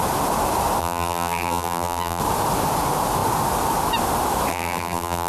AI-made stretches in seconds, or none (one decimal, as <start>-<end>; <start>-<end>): 0.8-2.2; 4.5-5.3